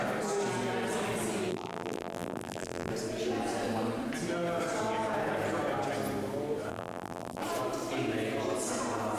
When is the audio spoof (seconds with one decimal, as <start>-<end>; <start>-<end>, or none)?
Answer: 1.5-2.9; 6.7-7.4